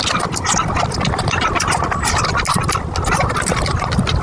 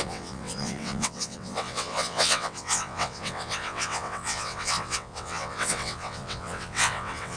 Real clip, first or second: first